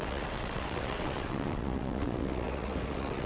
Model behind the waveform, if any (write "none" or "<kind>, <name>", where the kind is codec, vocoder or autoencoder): vocoder, WaveNeXt